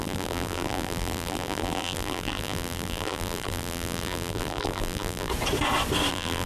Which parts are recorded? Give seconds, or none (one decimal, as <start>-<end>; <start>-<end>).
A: 5.3-6.1